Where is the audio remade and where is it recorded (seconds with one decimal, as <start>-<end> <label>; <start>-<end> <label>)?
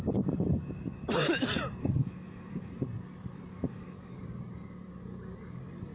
0.0-1.8 recorded; 1.8-2.8 remade; 2.8-3.5 recorded; 3.5-4.2 remade; 4.2-5.9 recorded